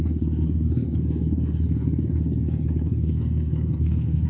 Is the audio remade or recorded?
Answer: remade